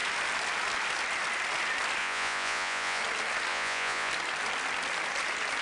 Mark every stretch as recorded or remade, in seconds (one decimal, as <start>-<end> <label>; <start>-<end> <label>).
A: 0.0-2.0 recorded; 2.0-3.0 remade; 3.0-3.5 recorded; 3.5-4.1 remade; 4.1-5.6 recorded